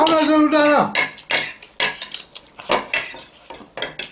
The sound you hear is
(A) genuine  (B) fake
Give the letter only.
A